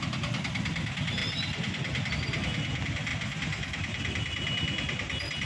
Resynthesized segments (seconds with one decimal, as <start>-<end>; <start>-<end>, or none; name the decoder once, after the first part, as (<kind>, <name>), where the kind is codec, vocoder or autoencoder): none